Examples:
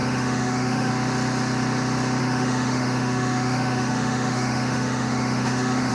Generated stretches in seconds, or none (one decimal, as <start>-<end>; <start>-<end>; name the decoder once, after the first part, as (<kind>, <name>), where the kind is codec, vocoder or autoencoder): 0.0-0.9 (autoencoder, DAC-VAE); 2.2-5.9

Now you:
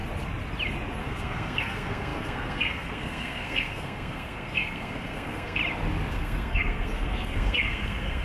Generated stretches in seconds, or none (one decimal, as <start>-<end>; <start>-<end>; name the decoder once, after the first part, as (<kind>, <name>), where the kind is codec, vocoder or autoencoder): 1.0-5.6 (codec, SNAC); 6.1-8.2

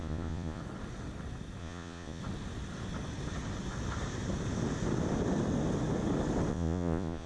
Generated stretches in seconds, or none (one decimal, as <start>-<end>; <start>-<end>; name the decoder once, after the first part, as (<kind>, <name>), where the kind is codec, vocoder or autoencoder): 0.0-0.6 (vocoder, Vocos); 1.6-2.2; 6.5-7.3

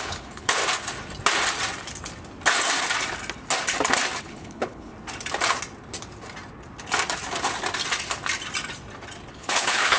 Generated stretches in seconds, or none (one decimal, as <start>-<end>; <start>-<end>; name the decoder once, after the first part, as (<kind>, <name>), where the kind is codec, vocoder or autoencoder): 0.0-0.6 (codec, HILCodec); 4.2-4.9; 9.3-10.0

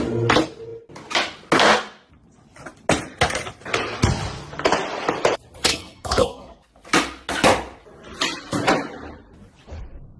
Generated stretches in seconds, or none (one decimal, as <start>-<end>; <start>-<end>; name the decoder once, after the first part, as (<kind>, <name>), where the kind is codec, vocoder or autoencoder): 5.7-6.7 (codec, SNAC)

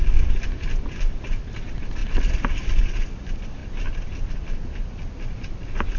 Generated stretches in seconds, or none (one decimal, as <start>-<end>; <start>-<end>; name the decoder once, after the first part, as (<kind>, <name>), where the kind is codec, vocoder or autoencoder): none

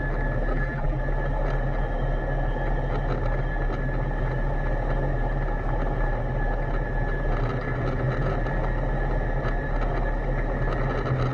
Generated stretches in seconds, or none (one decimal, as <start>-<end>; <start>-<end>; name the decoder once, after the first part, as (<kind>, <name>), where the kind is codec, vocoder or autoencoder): 0.5-1.0 (vocoder, BigVGAN v2)

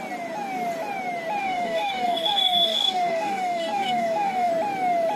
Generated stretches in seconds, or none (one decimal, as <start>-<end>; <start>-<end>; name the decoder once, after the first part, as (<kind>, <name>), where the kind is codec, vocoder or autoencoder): 1.4-4.5 (codec, DAC)